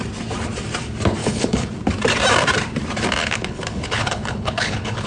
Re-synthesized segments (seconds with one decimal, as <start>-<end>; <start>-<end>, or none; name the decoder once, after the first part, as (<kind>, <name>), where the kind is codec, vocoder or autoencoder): 1.2-1.7 (codec, HILCodec); 3.2-5.1